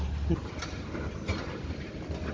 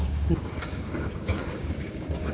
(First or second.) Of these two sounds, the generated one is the second